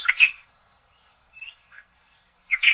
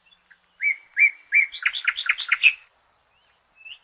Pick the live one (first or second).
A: second